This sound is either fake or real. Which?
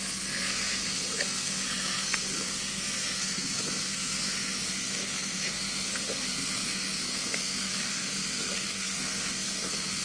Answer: fake